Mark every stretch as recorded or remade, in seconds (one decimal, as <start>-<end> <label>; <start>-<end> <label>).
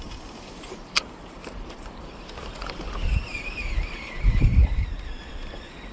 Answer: 0.0-4.6 remade; 4.6-5.3 recorded; 5.3-5.9 remade